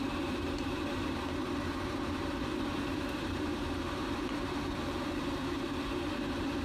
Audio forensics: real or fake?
fake